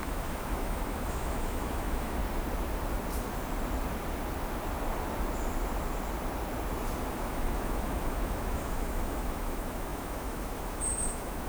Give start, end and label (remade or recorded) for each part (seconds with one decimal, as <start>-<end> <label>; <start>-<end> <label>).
0.0-2.2 remade; 2.2-7.1 recorded; 7.1-11.5 remade